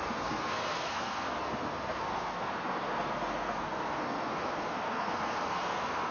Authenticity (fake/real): fake